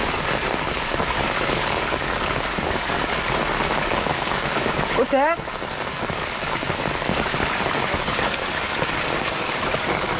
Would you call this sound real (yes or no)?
no